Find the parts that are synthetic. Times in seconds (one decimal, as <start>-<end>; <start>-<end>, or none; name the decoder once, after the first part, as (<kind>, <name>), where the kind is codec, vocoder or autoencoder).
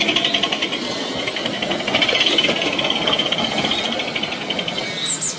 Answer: none